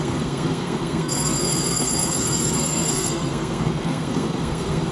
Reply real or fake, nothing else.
fake